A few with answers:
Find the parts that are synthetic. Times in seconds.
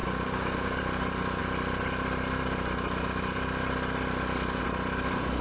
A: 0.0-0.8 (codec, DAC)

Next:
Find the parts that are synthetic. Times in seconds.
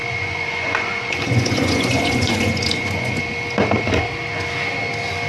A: 0.0-3.2 (vocoder, Vocos)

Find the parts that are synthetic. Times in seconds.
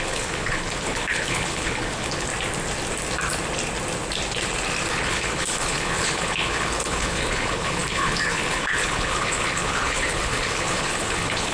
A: 0.0-2.3 (codec, HILCodec); 4.9-11.5